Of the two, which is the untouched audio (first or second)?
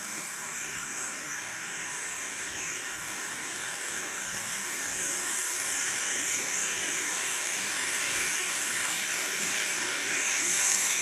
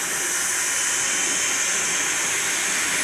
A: second